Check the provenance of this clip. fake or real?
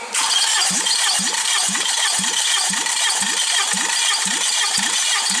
fake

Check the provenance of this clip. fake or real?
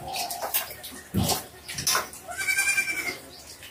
real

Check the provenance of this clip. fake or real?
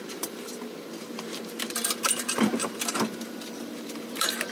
fake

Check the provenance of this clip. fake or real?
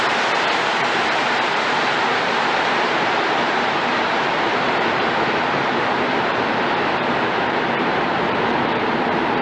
fake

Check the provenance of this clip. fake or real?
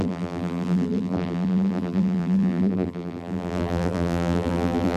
fake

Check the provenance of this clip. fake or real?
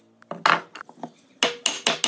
real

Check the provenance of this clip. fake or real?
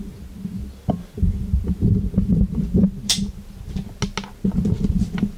real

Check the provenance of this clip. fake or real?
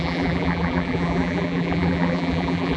fake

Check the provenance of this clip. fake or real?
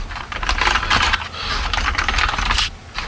fake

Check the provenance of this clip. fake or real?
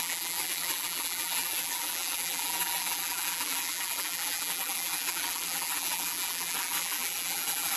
fake